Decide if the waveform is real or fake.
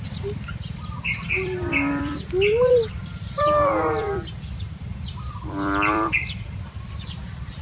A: fake